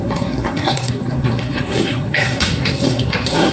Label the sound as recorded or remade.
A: remade